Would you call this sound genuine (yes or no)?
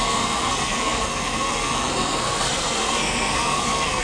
no